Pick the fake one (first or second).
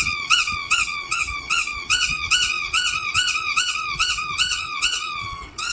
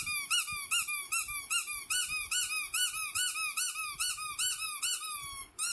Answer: first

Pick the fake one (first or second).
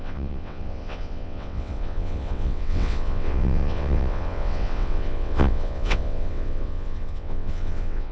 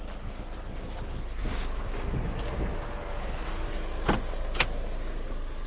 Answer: first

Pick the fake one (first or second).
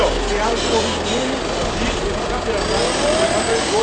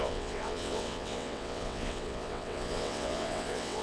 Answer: second